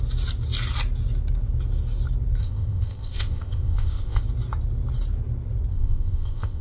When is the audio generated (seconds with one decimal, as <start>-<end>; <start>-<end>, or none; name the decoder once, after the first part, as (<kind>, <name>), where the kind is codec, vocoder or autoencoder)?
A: 2.4-4.2 (codec, ZipCodec); 5.7-6.6